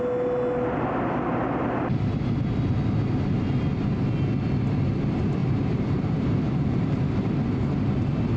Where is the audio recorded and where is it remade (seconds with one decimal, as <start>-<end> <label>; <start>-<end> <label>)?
0.0-5.4 recorded; 5.4-7.3 remade; 7.3-8.4 recorded

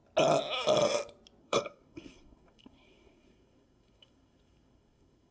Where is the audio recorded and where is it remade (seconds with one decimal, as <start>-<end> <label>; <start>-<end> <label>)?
0.0-1.4 recorded; 1.4-5.3 remade